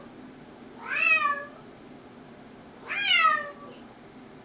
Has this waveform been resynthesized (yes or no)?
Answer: no